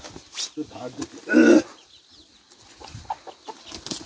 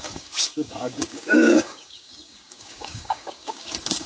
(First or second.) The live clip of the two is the first